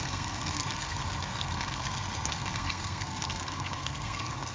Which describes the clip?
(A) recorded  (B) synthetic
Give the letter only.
B